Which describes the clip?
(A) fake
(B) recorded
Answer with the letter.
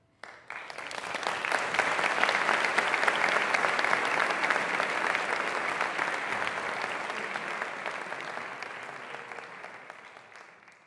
B